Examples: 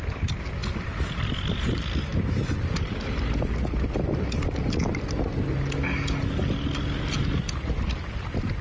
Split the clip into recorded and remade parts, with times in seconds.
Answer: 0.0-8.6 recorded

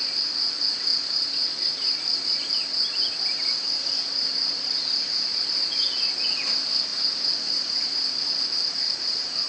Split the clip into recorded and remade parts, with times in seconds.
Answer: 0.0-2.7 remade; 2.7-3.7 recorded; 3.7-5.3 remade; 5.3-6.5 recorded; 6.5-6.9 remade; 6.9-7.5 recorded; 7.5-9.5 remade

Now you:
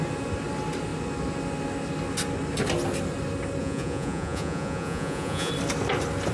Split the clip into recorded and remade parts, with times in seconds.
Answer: 0.0-3.6 recorded; 3.6-5.5 remade; 5.5-6.3 recorded

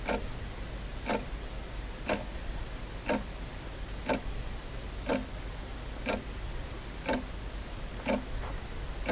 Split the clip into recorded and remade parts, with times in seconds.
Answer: 0.0-9.1 recorded

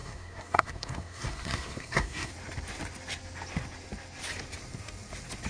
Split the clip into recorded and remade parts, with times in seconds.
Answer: 0.0-2.3 remade; 2.3-5.5 recorded